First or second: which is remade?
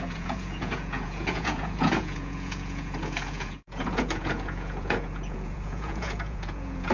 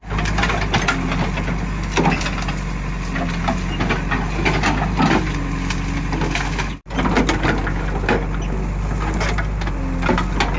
first